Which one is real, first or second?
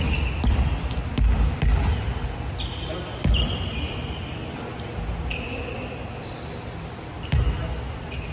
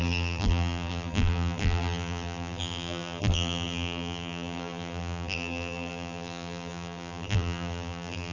first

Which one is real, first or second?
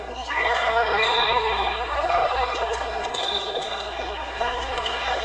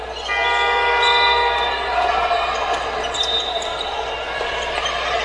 second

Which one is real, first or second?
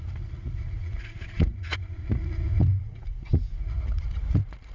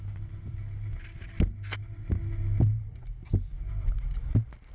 second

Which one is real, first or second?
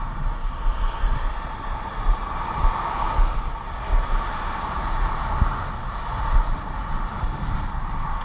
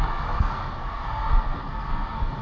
first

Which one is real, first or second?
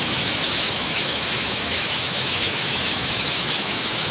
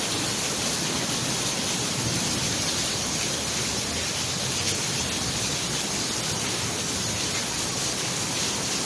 second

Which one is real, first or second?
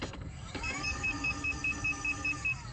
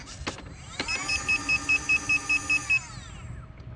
second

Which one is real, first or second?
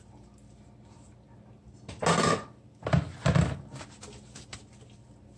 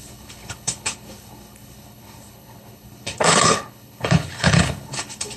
first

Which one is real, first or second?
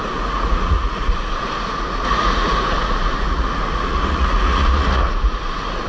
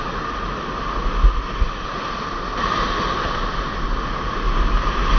second